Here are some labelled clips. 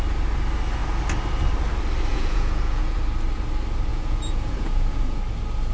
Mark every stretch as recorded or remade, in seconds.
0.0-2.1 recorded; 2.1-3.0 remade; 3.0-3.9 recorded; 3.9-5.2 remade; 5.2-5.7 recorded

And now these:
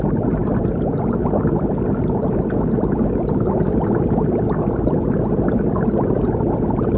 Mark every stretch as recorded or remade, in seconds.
0.0-7.0 recorded

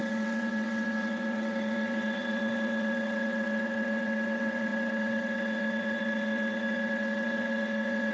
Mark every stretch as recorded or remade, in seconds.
0.0-8.1 remade

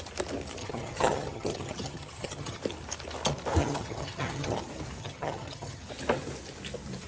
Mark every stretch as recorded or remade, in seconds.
0.0-0.6 recorded; 0.6-2.6 remade; 2.6-3.6 recorded; 3.6-4.6 remade; 4.6-5.0 recorded; 5.0-5.9 remade; 5.9-7.1 recorded

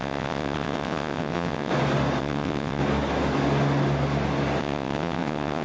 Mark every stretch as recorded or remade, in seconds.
0.0-1.7 remade; 1.7-2.2 recorded; 2.2-2.8 remade; 2.8-4.6 recorded; 4.6-5.6 remade

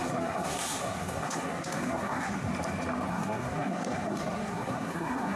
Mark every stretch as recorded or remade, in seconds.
0.0-2.5 remade; 2.5-3.1 recorded; 3.1-5.4 remade

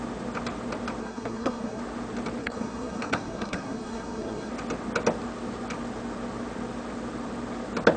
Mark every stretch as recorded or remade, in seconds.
0.0-1.0 recorded; 1.0-1.8 remade; 1.8-2.4 recorded; 2.4-4.5 remade; 4.5-8.0 recorded